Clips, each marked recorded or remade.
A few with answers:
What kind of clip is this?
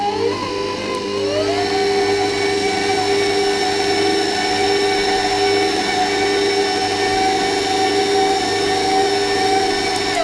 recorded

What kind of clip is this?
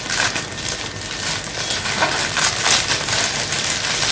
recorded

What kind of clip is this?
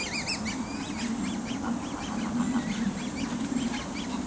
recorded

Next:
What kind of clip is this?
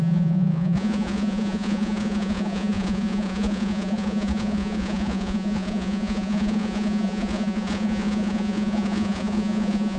remade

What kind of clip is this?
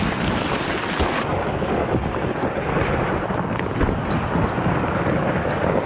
recorded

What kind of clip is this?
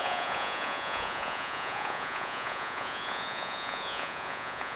remade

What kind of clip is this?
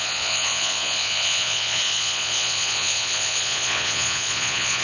remade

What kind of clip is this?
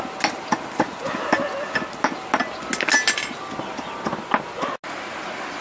recorded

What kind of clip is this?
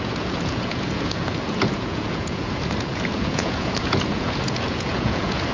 remade